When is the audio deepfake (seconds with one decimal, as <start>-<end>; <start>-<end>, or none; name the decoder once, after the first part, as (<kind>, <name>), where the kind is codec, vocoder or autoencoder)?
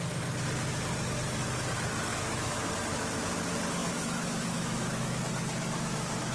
2.1-2.7 (autoencoder, DAC-VAE); 3.8-5.2